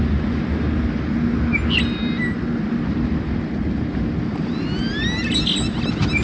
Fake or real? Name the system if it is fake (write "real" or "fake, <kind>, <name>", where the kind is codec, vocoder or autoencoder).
real